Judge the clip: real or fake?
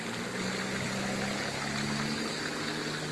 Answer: real